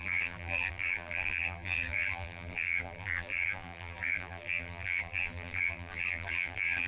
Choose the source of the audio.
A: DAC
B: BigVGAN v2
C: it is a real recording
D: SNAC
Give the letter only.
B